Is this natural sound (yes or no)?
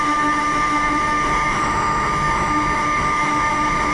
no